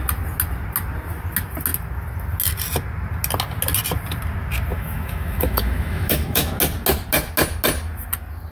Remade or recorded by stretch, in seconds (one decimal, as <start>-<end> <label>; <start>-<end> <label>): 0.0-4.7 recorded; 4.7-6.5 remade; 6.5-8.5 recorded